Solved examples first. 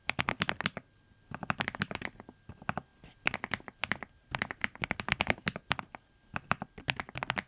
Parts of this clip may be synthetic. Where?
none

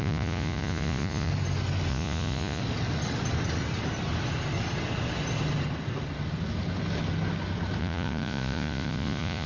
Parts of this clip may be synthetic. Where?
0.0-1.3; 1.9-2.6; 7.8-9.5

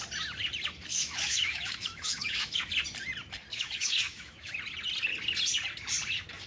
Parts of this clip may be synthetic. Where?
0.9-2.7; 3.5-4.5